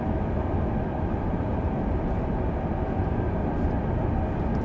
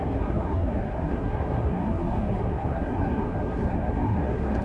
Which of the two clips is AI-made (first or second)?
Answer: second